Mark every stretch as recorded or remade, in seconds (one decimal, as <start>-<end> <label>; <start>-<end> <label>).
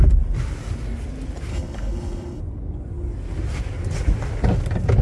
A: 0.0-1.5 recorded; 1.5-2.4 remade; 2.4-5.0 recorded